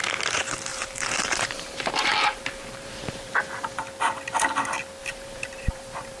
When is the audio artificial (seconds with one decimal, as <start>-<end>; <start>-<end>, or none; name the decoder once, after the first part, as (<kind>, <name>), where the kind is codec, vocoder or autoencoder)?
0.7-3.3 (vocoder, BigVGAN v2); 5.0-6.2